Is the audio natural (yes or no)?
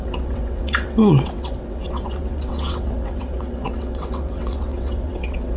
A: no